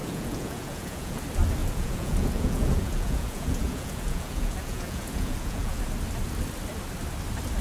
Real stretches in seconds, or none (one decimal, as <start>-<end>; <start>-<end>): 1.2-1.6; 5.8-7.6